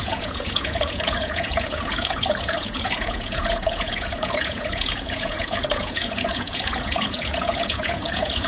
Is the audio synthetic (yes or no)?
yes